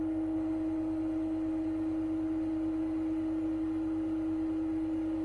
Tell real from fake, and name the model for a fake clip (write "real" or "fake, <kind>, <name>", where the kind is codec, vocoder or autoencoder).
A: real